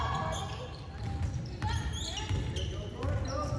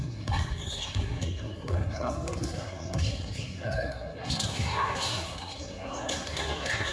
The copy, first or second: second